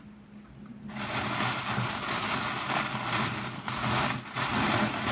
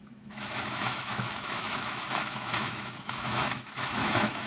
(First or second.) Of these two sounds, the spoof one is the second